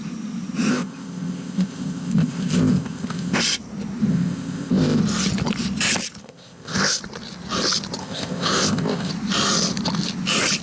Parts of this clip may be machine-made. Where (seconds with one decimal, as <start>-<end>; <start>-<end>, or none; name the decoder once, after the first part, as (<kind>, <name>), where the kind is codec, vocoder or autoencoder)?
0.7-3.4 (codec, ZipCodec); 4.1-5.0; 6.2-7.0; 8.0-9.1